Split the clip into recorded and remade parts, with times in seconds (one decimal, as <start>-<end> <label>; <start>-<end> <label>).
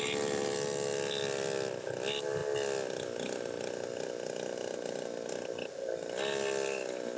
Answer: 0.0-7.2 recorded